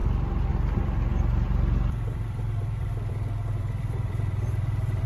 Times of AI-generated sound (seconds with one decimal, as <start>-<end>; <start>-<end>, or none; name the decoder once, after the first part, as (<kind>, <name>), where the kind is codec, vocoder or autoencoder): 0.0-5.1 (vocoder, BigVGAN v2)